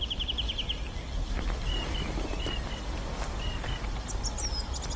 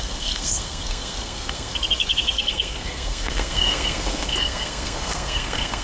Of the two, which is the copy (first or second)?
second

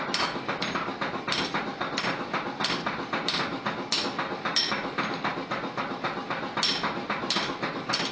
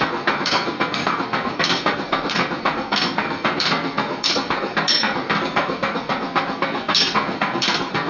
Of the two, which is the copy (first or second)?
second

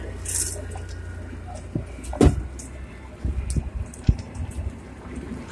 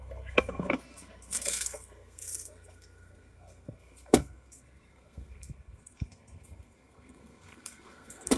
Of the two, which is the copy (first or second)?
second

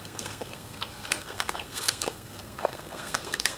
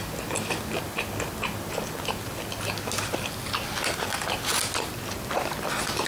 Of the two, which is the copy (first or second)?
first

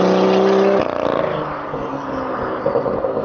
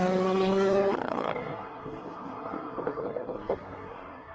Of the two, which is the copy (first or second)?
second